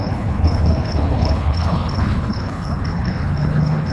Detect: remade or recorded remade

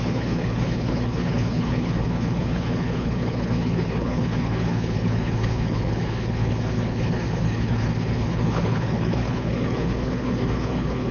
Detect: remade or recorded remade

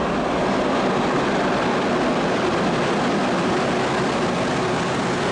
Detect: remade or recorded recorded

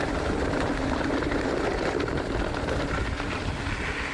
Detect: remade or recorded recorded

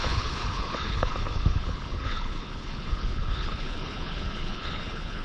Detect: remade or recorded remade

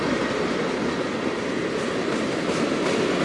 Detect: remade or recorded recorded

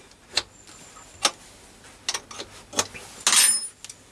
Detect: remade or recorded recorded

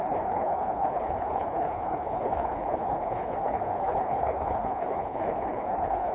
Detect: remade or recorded remade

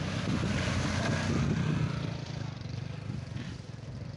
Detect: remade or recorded recorded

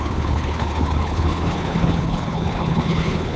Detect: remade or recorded remade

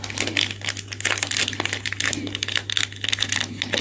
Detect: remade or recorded recorded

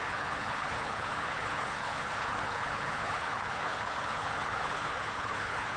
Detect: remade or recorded remade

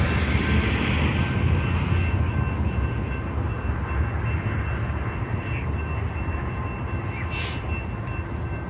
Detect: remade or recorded recorded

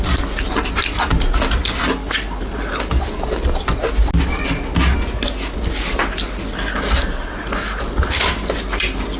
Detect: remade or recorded recorded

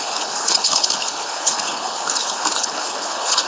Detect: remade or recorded remade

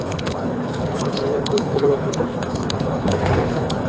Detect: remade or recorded remade